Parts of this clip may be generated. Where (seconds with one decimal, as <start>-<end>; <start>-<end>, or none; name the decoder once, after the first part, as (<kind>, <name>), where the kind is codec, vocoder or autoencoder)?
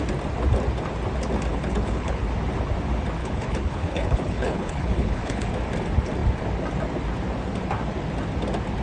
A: 1.5-2.2 (codec, HILCodec); 3.2-5.5